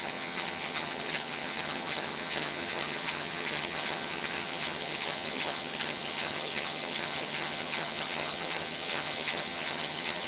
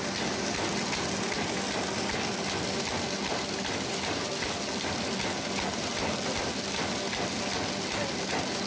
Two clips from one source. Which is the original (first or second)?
second